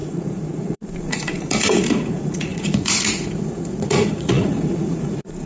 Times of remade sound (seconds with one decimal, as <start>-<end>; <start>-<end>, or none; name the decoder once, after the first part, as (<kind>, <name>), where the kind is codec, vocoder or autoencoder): 0.0-5.5 (vocoder, Vocos)